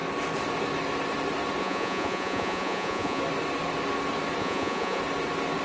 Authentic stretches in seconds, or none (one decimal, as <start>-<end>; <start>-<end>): 0.0-1.6; 3.2-4.4; 5.0-5.6